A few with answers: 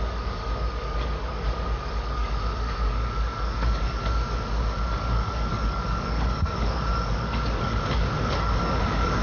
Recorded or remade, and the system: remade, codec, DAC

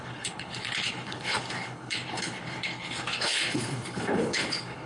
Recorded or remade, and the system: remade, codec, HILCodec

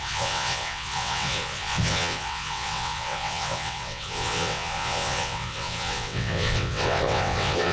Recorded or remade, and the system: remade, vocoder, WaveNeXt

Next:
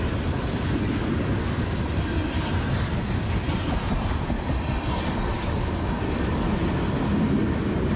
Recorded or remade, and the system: recorded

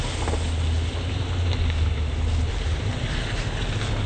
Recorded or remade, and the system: recorded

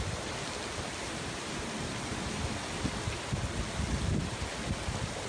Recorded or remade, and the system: recorded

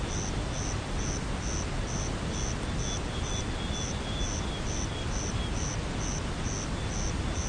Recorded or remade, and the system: recorded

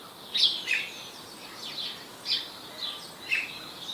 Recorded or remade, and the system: recorded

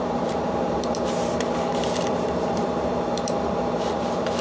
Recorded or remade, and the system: remade, vocoder, BigVGAN v2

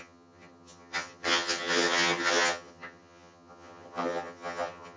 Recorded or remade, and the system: remade, vocoder, HiFi-GAN